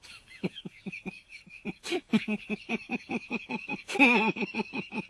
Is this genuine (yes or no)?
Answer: no